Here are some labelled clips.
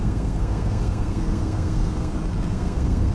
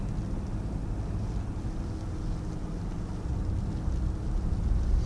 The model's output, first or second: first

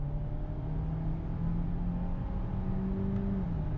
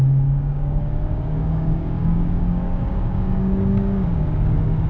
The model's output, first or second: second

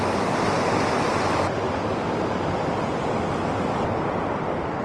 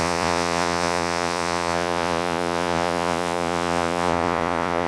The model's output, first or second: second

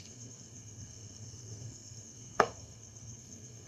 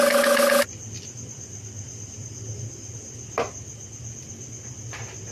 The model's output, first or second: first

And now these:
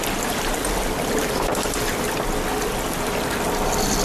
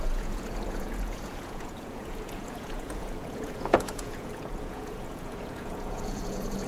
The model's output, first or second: second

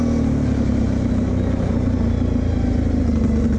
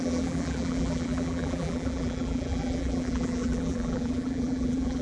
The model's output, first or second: second